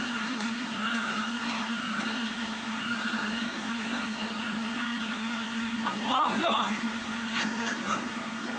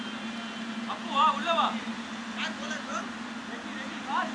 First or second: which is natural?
second